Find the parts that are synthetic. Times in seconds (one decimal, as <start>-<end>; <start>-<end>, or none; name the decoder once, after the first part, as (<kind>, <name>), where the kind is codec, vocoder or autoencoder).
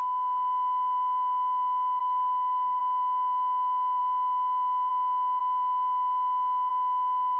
2.0-2.8 (codec, SNAC)